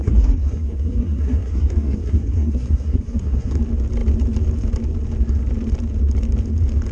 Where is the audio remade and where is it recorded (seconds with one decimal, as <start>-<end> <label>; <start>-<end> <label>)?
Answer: 0.0-3.6 remade; 3.6-6.9 recorded